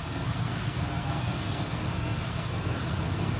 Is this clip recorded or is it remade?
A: remade